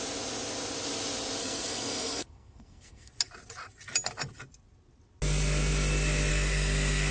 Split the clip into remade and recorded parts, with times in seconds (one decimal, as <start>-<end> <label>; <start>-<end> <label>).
0.0-1.4 recorded; 1.4-3.1 remade; 3.1-6.3 recorded; 6.3-7.1 remade